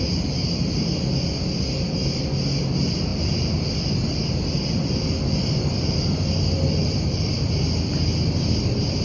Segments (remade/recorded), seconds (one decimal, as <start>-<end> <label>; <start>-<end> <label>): 0.0-3.1 recorded; 3.1-7.5 remade; 7.5-9.0 recorded